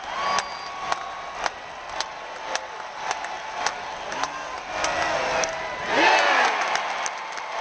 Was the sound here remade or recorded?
recorded